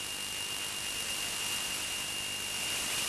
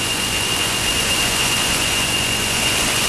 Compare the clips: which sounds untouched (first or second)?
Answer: first